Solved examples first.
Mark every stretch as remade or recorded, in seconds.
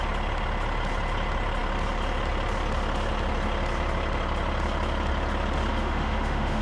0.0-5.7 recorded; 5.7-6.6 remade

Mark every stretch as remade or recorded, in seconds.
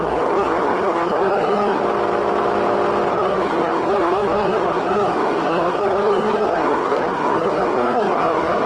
0.0-1.8 remade; 1.8-3.1 recorded; 3.1-8.7 remade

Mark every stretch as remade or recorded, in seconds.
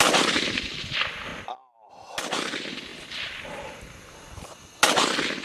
0.0-5.4 recorded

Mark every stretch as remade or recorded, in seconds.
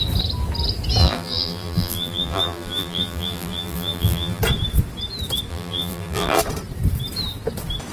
0.0-1.0 recorded; 1.0-4.4 remade; 4.4-5.5 recorded; 5.5-6.4 remade; 6.4-7.9 recorded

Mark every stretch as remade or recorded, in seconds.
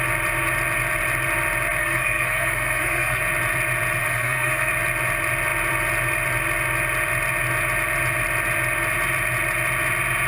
0.0-1.8 recorded; 1.8-3.2 remade; 3.2-4.0 recorded; 4.0-4.7 remade; 4.7-10.3 recorded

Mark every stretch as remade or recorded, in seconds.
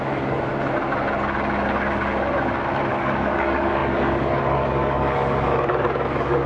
0.0-0.5 remade; 0.5-2.9 recorded; 2.9-6.5 remade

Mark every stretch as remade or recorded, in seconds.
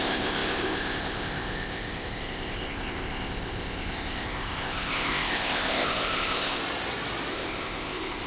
0.0-6.6 remade; 6.6-7.3 recorded; 7.3-8.3 remade